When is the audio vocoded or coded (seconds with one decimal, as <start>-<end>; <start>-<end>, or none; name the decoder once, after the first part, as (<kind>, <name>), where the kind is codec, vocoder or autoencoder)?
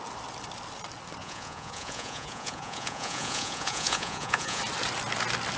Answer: 1.2-4.6 (vocoder, Vocos)